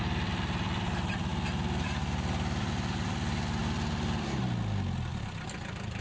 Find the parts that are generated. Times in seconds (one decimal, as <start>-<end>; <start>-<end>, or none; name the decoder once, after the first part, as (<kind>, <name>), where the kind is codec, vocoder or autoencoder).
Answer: 0.0-1.3 (vocoder, BigVGAN v2); 1.8-6.0